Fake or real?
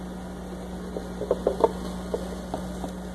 real